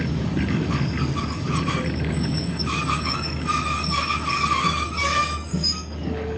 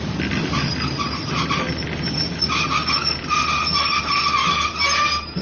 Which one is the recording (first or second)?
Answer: second